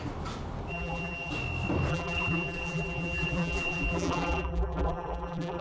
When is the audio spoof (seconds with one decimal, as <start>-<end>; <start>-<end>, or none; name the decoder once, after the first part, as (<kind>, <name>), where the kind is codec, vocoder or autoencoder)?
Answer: 0.7-1.3 (vocoder, BigVGAN v2); 1.9-5.6